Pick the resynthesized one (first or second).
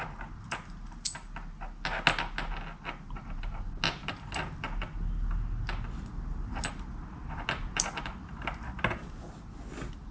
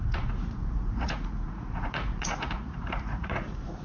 second